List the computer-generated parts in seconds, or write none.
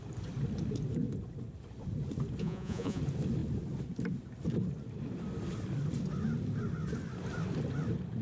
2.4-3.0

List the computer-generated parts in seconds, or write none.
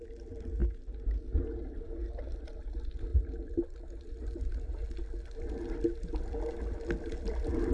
none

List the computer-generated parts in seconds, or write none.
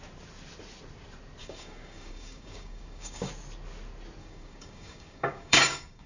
1.4-3.3; 4.2-6.1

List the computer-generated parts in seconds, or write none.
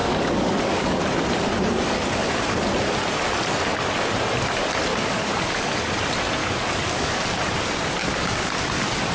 0.0-1.0; 4.9-5.9; 6.4-7.2; 8.0-8.5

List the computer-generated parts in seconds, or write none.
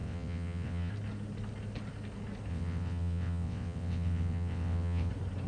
0.0-0.9; 2.5-5.1